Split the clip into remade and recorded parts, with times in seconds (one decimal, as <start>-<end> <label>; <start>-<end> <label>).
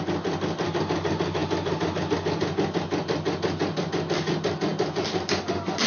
0.0-5.9 recorded